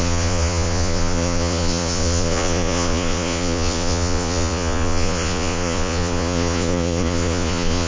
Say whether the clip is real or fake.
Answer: fake